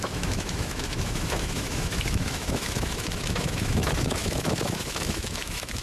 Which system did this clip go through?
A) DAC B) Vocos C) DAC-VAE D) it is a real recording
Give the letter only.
C